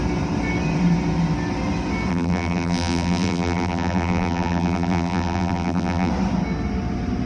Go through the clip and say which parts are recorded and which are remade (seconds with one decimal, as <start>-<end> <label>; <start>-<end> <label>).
0.0-2.1 recorded; 2.1-6.1 remade; 6.1-7.3 recorded

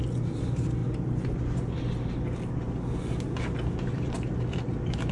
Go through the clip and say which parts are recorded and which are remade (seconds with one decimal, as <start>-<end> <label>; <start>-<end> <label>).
0.0-0.8 remade; 0.8-3.8 recorded; 3.8-5.1 remade

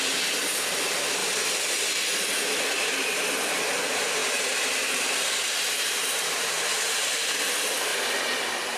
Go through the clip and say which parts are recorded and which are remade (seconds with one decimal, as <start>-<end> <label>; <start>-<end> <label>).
0.0-1.2 recorded; 1.2-2.0 remade; 2.0-4.2 recorded; 4.2-7.3 remade; 7.3-8.8 recorded

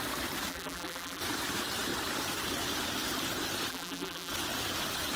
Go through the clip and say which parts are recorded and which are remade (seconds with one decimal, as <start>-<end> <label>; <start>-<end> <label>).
0.0-0.5 recorded; 0.5-1.2 remade; 1.2-3.7 recorded; 3.7-4.3 remade; 4.3-5.2 recorded

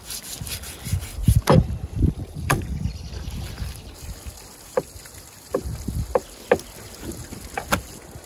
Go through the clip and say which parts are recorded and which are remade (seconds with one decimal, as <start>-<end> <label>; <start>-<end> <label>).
0.0-1.1 recorded; 1.1-2.6 remade; 2.6-8.3 recorded

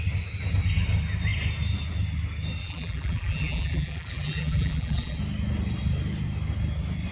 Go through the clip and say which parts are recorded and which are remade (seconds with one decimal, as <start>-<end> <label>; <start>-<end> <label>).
0.0-2.6 recorded; 2.6-5.2 remade; 5.2-7.1 recorded

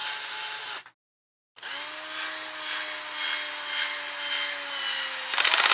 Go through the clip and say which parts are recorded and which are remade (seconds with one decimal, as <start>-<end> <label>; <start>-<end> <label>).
0.0-0.6 remade; 0.6-5.7 recorded

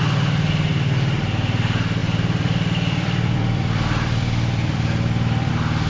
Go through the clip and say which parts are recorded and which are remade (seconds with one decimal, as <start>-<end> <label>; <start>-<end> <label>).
0.0-0.7 recorded; 0.7-1.2 remade; 1.2-2.0 recorded; 2.0-5.5 remade; 5.5-5.9 recorded